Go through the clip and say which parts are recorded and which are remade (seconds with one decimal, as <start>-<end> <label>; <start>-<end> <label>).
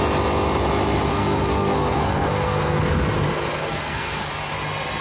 0.0-1.1 recorded; 1.1-2.8 remade; 2.8-3.6 recorded; 3.6-4.3 remade; 4.3-5.0 recorded